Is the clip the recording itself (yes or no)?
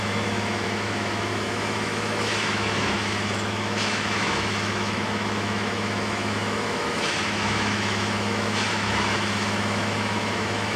no